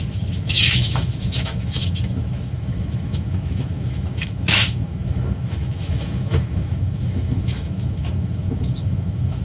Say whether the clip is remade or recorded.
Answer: remade